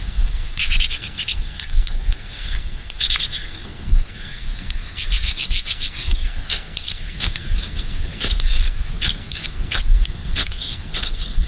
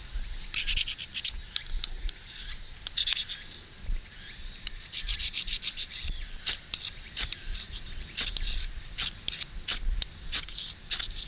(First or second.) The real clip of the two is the second